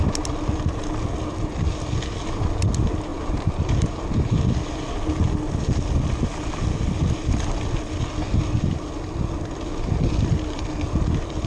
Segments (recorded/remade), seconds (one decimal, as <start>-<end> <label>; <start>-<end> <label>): 0.0-3.1 recorded; 3.1-4.3 remade; 4.3-11.5 recorded